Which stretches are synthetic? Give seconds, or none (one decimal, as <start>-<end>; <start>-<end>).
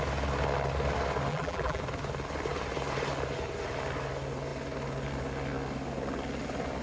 1.3-1.8